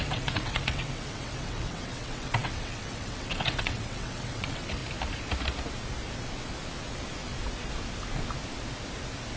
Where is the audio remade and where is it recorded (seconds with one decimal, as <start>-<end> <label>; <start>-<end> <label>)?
0.0-4.8 remade; 4.8-9.4 recorded